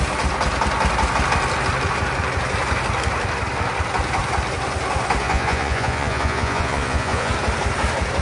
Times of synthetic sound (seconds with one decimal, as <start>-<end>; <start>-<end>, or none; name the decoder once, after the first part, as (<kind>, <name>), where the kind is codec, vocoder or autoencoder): 5.2-7.3 (vocoder, Vocos)